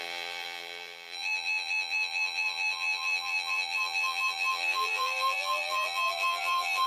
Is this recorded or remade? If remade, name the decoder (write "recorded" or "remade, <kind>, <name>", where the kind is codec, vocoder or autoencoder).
remade, vocoder, BigVGAN v2